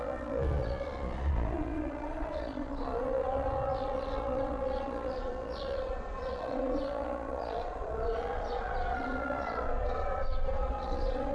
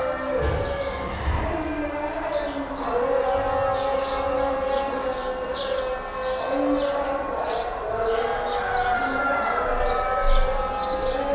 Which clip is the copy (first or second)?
first